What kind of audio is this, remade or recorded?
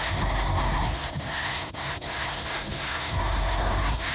remade